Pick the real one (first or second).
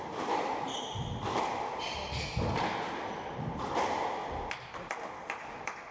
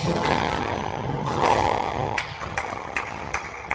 first